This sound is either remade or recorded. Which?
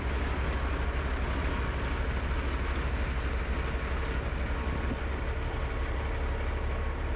recorded